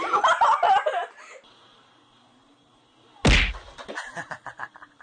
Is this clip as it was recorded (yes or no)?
yes